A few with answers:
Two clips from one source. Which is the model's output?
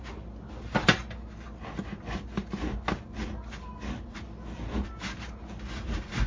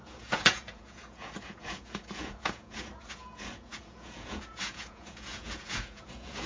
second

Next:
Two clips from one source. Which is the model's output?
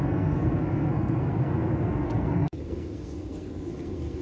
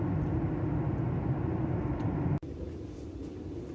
first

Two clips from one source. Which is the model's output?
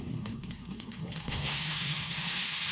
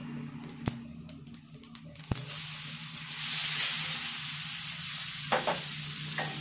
first